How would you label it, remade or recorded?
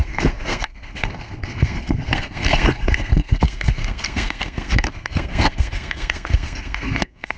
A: remade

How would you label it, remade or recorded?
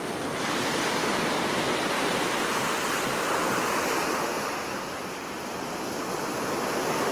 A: recorded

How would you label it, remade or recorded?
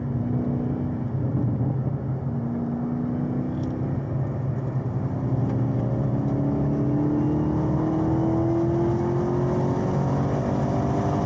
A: recorded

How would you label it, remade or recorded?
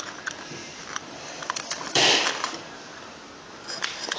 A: remade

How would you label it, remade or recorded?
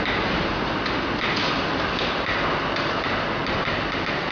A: recorded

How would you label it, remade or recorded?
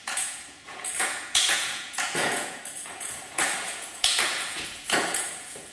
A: remade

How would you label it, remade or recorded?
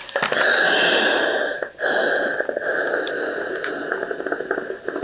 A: recorded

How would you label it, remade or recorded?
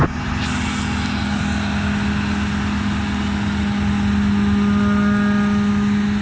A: recorded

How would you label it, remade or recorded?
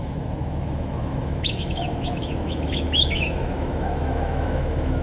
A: remade